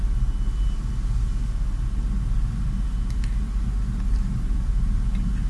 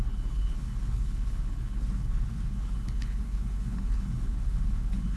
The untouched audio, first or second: first